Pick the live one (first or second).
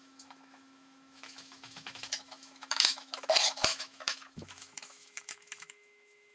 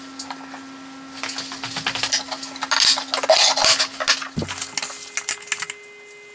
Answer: second